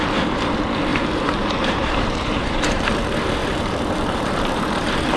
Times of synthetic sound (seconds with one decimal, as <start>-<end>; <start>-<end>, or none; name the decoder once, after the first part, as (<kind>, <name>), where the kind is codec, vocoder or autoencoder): 0.9-2.9 (vocoder, BigVGAN v2); 3.4-5.2